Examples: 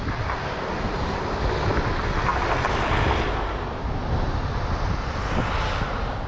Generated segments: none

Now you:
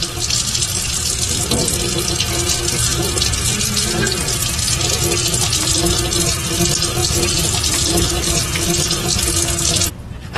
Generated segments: 7.0-8.3 (vocoder, BigVGAN v2)